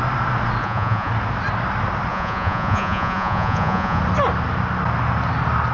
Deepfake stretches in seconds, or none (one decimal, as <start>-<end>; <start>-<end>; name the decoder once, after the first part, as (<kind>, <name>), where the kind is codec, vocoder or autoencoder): 0.6-1.1 (vocoder, Vocos); 2.1-4.0